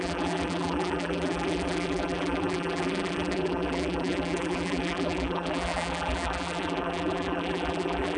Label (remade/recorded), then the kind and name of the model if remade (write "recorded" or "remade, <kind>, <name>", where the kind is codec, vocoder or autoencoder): remade, vocoder, BigVGAN v2